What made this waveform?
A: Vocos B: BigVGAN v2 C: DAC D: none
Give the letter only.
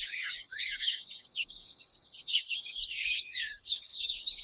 C